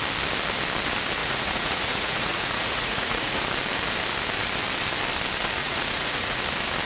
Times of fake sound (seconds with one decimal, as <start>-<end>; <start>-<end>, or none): 1.2-3.4; 5.6-6.4